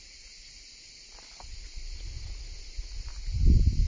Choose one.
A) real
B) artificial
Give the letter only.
A